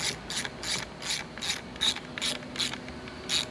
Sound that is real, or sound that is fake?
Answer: real